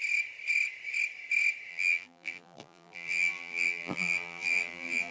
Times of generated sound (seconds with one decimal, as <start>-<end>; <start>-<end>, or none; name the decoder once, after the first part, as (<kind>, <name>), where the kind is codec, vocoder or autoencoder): 1.7-5.1 (vocoder, BigVGAN v2)